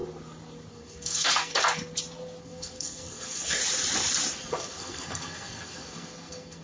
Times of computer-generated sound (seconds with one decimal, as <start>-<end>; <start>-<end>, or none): 0.7-1.5; 2.4-3.6; 4.4-6.6